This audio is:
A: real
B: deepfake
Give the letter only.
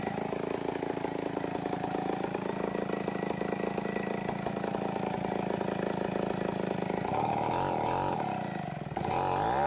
A